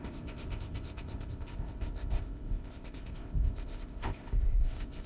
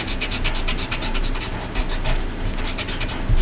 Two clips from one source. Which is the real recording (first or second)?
second